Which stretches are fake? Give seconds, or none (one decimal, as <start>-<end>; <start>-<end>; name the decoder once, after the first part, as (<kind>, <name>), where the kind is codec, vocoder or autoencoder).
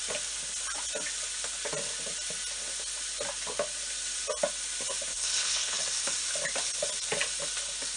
5.1-5.8 (codec, HILCodec)